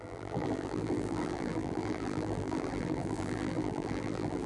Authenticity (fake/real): fake